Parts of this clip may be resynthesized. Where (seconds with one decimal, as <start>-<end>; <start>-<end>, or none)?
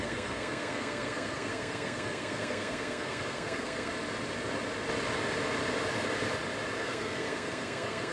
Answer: 0.0-3.9; 6.8-8.1